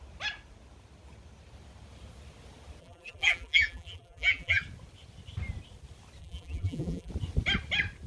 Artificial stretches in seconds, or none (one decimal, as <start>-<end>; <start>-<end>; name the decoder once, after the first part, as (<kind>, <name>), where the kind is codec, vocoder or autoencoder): 2.8-4.6 (vocoder, BigVGAN v2); 6.2-7.1